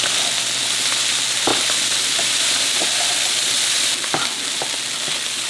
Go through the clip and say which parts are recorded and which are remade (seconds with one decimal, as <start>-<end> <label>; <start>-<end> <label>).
0.0-1.5 recorded; 1.5-3.1 remade; 3.1-5.5 recorded